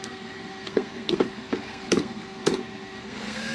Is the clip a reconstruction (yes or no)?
yes